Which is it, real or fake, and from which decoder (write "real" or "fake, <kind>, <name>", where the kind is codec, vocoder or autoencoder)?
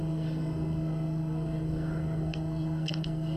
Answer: fake, codec, SNAC